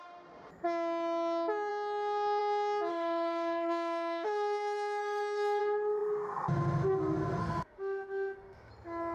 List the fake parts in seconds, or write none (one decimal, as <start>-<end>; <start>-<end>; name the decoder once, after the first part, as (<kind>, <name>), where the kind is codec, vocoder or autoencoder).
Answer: 2.9-5.6 (autoencoder, DAC-VAE); 7.4-8.7